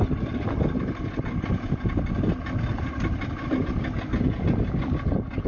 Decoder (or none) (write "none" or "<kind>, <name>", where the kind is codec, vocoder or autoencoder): none